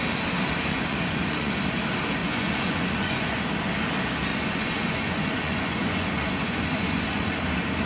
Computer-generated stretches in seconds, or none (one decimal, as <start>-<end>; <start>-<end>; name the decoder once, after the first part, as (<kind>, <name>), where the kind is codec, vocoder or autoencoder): 0.7-1.6 (vocoder, Vocos); 2.2-3.5; 4.3-7.3